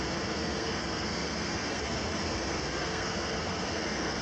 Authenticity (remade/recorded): remade